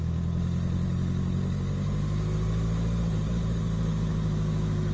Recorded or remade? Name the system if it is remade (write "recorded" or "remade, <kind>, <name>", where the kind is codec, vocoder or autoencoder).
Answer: recorded